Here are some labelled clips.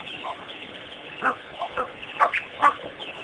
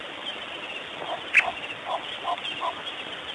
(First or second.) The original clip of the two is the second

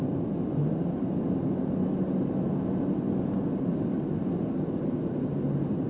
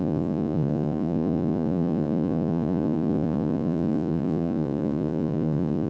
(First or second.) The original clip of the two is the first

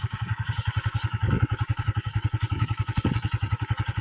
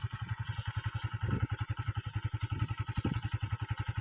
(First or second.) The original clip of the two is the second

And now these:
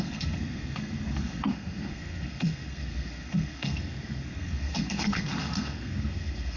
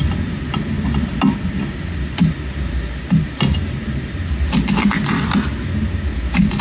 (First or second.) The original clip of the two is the second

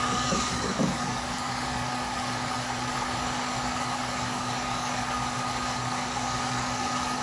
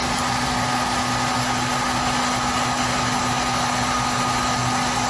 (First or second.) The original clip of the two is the second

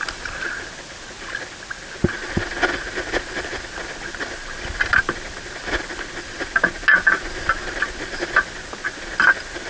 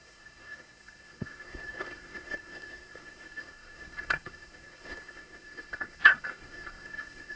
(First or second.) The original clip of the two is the first